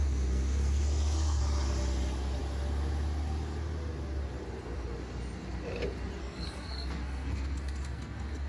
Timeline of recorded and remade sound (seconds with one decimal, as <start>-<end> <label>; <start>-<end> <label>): 0.0-1.4 remade; 1.4-6.2 recorded; 6.2-8.5 remade